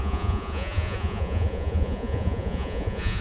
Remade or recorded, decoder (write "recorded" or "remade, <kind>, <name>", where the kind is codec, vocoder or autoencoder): remade, vocoder, Vocos